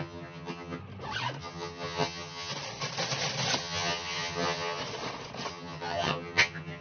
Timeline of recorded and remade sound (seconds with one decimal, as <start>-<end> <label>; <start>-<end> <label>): 0.0-0.8 remade; 0.8-1.4 recorded; 1.4-2.5 remade; 2.5-3.6 recorded; 3.6-4.8 remade; 4.8-5.5 recorded; 5.5-6.8 remade